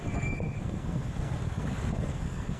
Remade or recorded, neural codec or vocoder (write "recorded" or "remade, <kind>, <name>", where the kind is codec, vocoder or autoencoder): remade, codec, SNAC